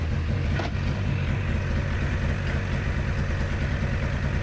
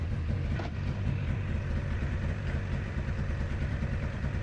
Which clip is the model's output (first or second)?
second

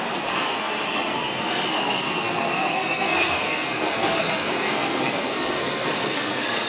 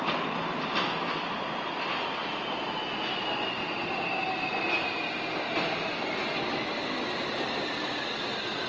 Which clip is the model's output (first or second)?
first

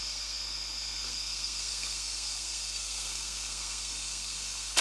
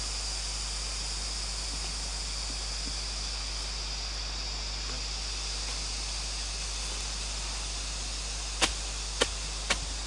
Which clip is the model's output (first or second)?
first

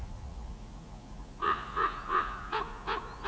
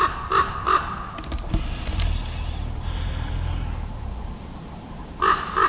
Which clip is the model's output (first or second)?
first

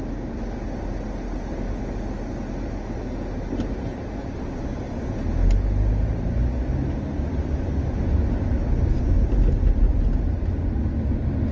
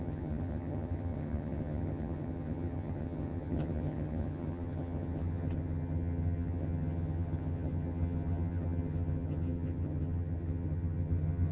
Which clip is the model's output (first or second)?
second